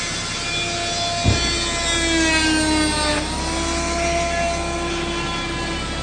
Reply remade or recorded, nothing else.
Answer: recorded